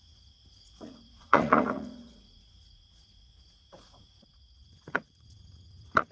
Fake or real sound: fake